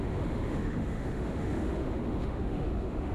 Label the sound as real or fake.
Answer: fake